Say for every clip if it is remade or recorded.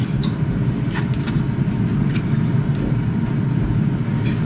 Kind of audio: recorded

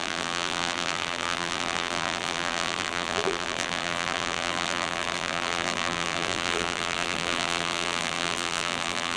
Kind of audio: remade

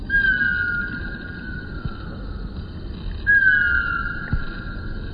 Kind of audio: recorded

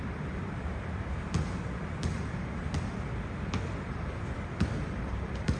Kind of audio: remade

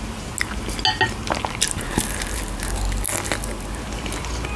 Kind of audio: recorded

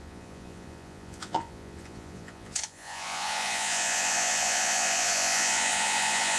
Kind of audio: remade